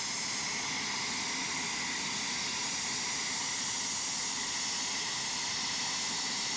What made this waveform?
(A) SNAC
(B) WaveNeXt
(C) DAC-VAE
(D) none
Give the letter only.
D